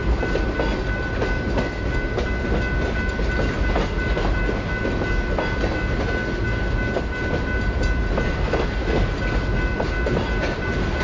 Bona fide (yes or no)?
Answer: yes